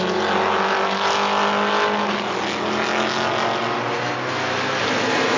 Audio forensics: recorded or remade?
recorded